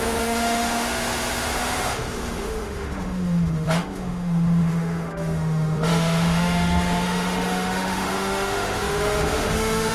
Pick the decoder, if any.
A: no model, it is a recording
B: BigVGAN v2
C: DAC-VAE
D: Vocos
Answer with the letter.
C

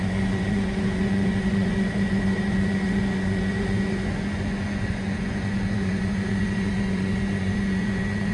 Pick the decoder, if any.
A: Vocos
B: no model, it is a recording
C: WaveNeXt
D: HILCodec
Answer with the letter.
A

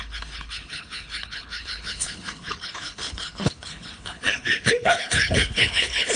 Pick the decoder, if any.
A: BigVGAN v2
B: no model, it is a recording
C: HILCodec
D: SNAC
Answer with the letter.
C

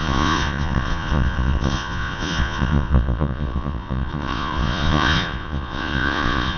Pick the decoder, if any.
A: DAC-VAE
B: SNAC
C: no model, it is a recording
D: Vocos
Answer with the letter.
D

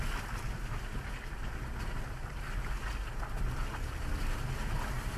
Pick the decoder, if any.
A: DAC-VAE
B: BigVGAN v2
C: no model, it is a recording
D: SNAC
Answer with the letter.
C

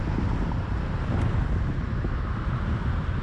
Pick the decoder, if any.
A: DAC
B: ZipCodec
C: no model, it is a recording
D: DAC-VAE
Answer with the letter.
C